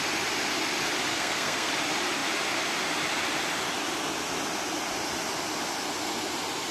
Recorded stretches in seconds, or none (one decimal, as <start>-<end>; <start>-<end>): 0.0-1.1; 1.7-6.7